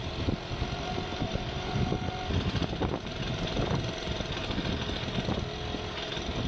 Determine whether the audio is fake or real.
real